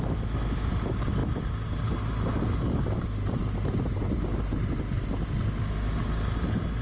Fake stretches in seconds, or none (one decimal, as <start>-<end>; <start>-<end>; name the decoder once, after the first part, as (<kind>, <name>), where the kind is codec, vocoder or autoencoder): none

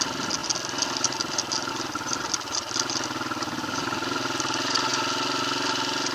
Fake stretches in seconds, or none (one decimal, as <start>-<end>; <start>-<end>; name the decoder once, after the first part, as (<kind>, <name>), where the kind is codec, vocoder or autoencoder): none

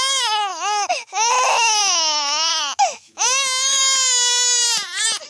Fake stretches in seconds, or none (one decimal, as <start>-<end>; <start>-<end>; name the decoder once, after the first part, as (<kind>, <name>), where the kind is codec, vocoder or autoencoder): 0.0-3.8 (autoencoder, DAC-VAE)

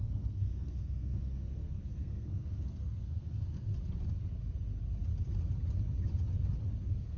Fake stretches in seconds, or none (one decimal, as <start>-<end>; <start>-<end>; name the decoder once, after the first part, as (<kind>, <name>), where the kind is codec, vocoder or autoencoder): 0.0-3.7 (codec, SNAC); 6.8-7.2

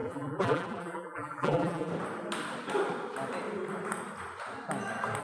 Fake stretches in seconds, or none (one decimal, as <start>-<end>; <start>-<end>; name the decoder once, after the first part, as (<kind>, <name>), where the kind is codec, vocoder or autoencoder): 0.0-1.9 (vocoder, BigVGAN v2)

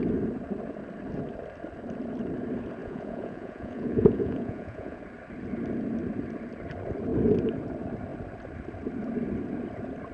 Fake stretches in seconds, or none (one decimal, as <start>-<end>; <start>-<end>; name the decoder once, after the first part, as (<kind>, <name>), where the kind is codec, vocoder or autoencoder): 2.8-5.0 (vocoder, Vocos)

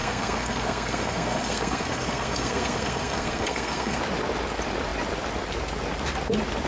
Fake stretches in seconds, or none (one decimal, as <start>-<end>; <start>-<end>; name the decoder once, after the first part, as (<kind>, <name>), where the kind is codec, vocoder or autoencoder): 0.0-4.0 (codec, SNAC)